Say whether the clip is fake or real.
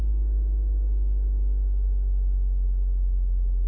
real